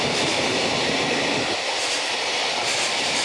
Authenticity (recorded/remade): recorded